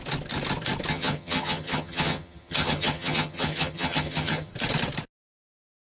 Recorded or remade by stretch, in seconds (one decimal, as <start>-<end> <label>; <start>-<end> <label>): 0.0-0.9 recorded; 0.9-4.5 remade; 4.5-6.0 recorded